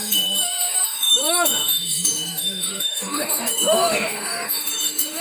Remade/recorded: remade